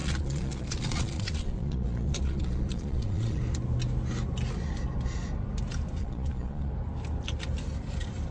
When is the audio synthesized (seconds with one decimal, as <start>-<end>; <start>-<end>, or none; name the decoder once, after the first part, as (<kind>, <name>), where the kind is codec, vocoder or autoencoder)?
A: 0.0-3.4 (vocoder, Vocos); 6.0-6.7